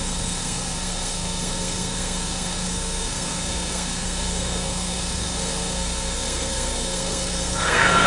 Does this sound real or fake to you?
fake